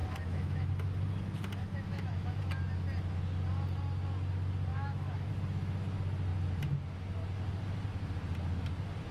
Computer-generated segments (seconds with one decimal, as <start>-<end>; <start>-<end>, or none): 0.0-0.7; 1.6-2.4; 4.7-5.3